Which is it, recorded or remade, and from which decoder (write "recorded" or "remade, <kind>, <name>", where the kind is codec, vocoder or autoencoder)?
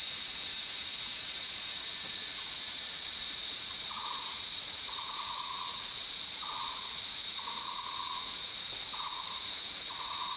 remade, vocoder, Vocos